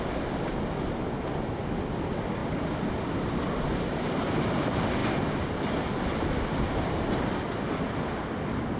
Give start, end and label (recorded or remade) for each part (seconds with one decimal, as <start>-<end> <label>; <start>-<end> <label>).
0.0-8.8 recorded